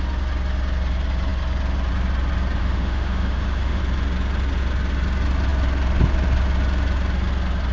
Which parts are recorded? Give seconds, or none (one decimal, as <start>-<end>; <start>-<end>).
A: 0.0-2.6; 3.8-7.7